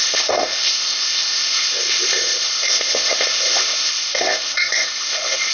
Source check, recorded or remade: remade